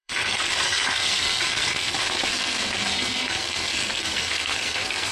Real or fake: fake